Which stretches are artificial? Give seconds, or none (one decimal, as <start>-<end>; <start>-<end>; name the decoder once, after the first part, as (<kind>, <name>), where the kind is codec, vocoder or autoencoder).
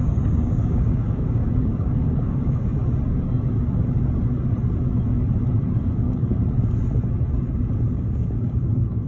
0.0-2.7 (codec, DAC); 5.8-6.4; 7.9-9.1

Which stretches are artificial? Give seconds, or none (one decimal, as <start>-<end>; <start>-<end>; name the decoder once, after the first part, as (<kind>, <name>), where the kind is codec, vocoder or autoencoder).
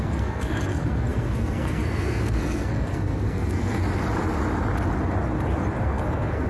0.0-3.8 (codec, SNAC); 5.8-6.5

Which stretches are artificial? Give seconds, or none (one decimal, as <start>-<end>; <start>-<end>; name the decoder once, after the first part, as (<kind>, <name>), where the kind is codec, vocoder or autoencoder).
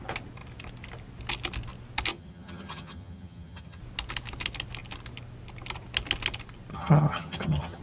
2.1-3.8 (vocoder, HiFi-GAN); 6.7-7.8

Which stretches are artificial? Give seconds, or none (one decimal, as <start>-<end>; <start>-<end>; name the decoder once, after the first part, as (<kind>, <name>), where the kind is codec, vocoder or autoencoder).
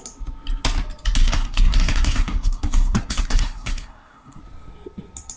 1.2-4.4 (codec, SNAC)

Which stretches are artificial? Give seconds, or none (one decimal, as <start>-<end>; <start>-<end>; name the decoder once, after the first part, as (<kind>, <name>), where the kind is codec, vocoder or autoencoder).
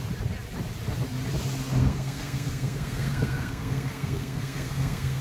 1.8-5.2 (codec, SNAC)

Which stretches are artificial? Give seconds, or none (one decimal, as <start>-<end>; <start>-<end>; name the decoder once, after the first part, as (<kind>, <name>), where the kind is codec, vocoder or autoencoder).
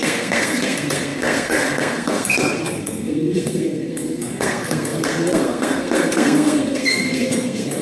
0.0-7.8 (codec, SNAC)